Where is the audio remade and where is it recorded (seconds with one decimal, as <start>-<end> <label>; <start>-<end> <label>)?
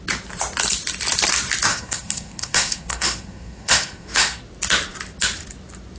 0.0-1.7 recorded; 1.7-4.4 remade; 4.4-6.0 recorded